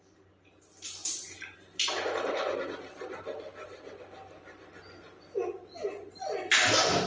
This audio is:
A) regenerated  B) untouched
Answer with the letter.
B